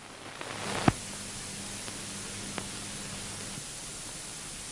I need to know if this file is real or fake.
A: real